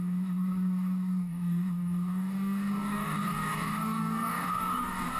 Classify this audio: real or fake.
fake